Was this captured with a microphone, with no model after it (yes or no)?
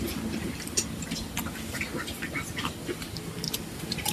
yes